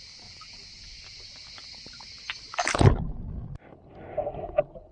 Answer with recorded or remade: recorded